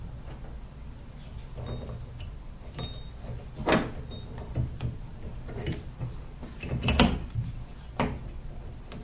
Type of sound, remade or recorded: recorded